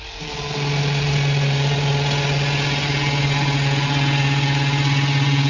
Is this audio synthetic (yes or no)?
no